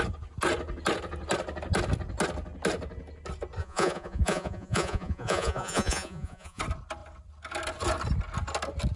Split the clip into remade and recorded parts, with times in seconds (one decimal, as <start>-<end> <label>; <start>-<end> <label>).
0.0-3.6 recorded; 3.6-6.6 remade; 6.6-9.0 recorded